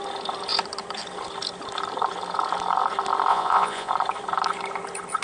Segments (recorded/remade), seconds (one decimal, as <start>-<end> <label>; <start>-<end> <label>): 0.0-3.3 recorded; 3.3-3.9 remade; 3.9-5.2 recorded